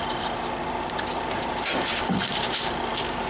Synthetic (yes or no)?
yes